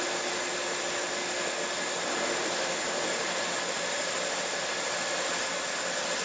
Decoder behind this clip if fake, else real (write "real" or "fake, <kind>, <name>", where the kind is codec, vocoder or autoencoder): real